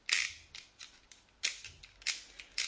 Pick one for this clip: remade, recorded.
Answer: recorded